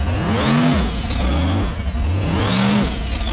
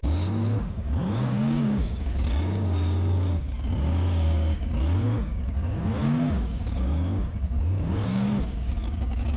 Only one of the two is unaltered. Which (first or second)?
first